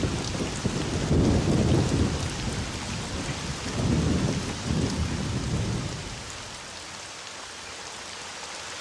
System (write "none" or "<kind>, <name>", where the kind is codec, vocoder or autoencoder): none